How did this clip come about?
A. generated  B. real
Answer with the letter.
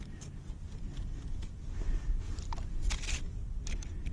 B